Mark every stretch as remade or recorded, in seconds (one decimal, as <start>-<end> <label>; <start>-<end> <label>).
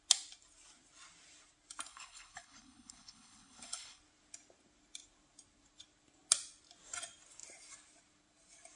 0.0-1.9 recorded; 1.9-4.0 remade; 4.0-8.8 recorded